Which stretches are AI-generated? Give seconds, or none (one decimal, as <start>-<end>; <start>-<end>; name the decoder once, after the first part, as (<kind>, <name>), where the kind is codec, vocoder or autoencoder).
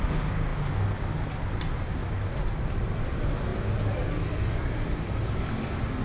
none